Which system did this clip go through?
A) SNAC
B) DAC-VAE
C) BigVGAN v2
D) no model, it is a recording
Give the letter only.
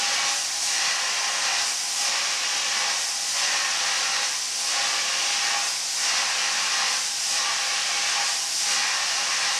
D